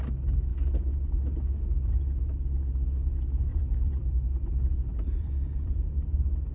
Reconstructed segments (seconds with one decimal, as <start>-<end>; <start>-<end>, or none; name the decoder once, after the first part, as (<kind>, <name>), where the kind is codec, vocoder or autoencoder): 3.5-4.0 (vocoder, BigVGAN v2); 4.9-6.0